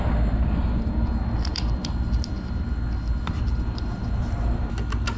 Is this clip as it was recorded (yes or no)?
yes